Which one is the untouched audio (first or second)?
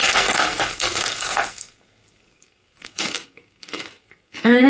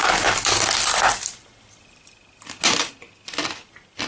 second